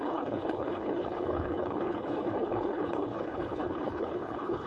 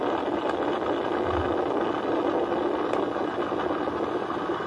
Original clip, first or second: second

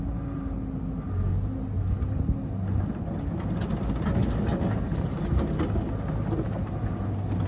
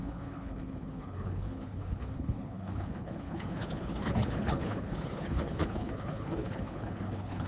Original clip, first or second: first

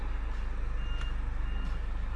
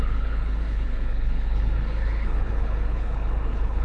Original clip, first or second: first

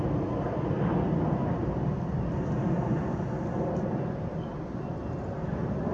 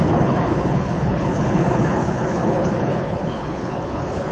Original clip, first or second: first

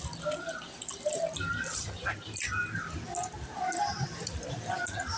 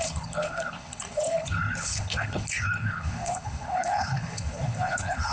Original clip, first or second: first